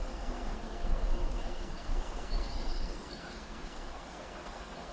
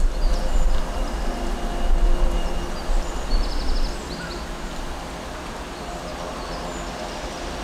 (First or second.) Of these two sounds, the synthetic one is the first